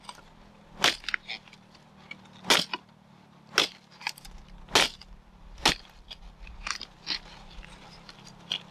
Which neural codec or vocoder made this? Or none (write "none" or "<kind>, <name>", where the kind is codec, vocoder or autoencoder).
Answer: none